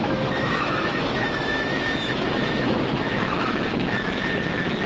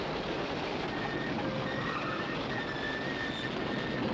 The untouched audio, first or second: second